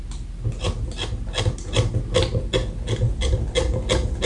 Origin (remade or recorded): recorded